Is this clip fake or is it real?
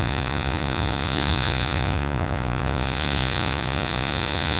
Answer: fake